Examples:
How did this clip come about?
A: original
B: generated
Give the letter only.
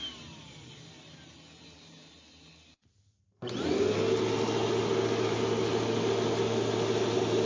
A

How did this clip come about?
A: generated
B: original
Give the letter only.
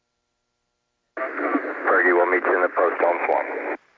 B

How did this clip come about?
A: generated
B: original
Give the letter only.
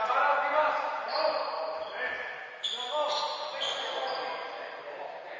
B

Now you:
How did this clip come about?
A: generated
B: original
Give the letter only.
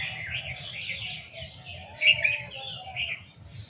B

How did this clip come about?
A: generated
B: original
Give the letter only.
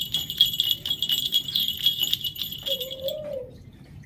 A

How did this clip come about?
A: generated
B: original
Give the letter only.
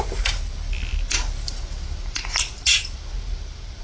B